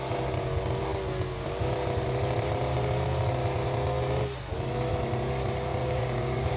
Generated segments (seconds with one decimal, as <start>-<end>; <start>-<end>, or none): 5.8-6.6